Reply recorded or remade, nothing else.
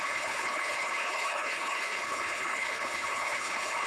remade